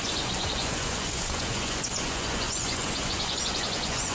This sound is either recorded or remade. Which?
remade